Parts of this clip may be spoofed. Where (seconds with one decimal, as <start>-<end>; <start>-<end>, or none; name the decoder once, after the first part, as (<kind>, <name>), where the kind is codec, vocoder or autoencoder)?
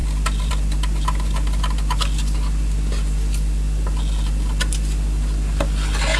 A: none